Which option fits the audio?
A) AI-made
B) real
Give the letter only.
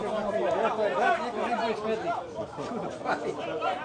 B